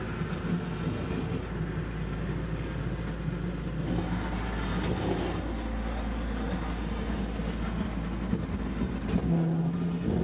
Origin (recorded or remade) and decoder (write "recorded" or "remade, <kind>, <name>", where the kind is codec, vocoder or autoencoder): recorded